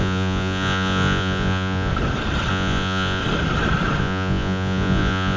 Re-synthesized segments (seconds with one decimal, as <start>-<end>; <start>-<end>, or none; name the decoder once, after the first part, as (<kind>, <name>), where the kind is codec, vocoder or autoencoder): 0.0-1.9 (vocoder, Vocos); 2.5-3.2; 4.0-5.4